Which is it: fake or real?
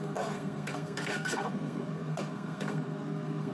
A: fake